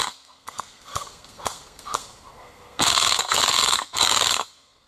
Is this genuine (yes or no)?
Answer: no